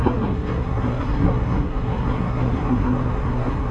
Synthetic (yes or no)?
yes